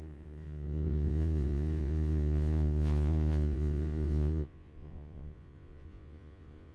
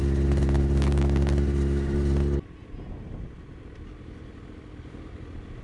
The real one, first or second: second